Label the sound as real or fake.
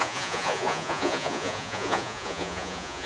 fake